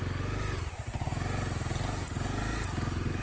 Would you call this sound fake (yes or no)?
no